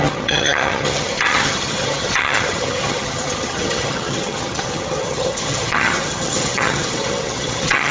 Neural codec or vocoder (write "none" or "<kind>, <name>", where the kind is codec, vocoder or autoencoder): vocoder, HiFi-GAN